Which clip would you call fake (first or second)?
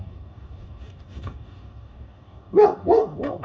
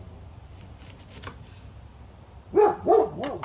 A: first